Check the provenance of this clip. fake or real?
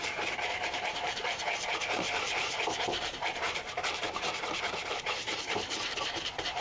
fake